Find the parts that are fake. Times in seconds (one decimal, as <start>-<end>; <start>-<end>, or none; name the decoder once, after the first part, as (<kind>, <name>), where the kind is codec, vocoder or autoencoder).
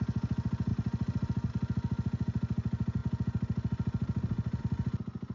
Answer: none